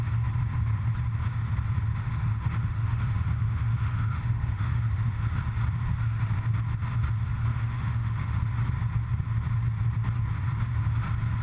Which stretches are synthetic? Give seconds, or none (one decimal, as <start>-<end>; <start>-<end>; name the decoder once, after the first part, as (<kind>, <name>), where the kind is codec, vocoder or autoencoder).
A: 1.9-5.2 (autoencoder, DAC-VAE); 7.5-8.5